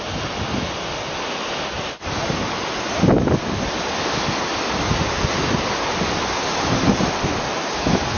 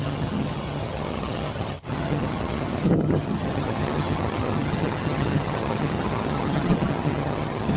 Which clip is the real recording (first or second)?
first